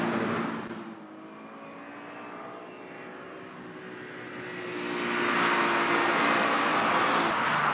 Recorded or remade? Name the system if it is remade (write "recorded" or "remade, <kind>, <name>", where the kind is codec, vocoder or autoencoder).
recorded